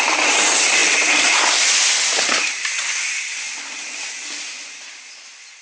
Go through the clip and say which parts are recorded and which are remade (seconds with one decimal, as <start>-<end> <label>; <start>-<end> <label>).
0.0-5.6 recorded